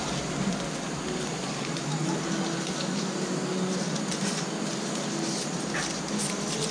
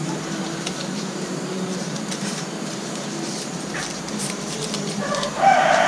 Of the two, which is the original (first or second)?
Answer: first